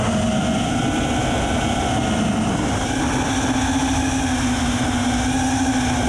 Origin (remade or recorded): recorded